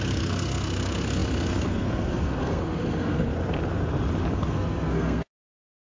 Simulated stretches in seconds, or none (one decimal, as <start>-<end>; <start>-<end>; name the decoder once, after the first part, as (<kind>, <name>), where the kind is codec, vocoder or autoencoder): 0.0-3.3 (codec, SNAC); 4.3-5.9